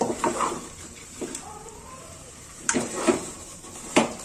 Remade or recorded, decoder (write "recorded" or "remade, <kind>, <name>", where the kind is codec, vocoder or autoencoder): remade, vocoder, BigVGAN v2